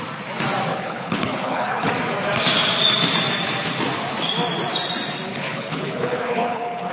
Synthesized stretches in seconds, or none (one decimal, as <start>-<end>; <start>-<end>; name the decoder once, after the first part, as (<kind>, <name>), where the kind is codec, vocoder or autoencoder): 0.7-1.9 (codec, HILCodec); 5.3-6.9